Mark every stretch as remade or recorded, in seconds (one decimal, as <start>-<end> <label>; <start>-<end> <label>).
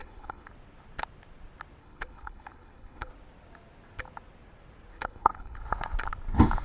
0.0-0.5 remade; 0.5-1.8 recorded; 1.8-3.1 remade; 3.1-4.9 recorded; 4.9-5.6 remade; 5.6-6.6 recorded